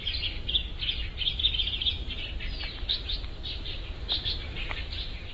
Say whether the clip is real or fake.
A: fake